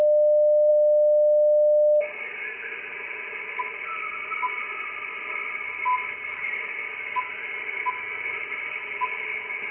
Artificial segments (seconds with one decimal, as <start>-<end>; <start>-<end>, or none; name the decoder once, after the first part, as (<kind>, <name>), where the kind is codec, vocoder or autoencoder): none